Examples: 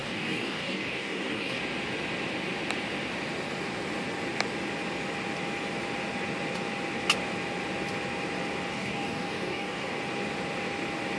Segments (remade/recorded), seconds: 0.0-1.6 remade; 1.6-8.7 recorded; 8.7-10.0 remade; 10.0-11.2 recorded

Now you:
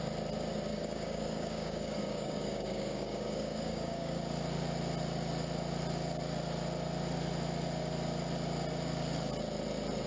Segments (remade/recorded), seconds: 0.0-0.7 recorded; 0.7-4.2 remade; 4.2-10.1 recorded